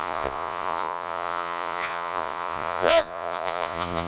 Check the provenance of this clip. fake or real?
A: fake